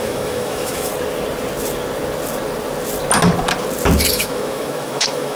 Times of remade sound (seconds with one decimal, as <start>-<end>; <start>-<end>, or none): 0.0-0.9; 4.1-5.4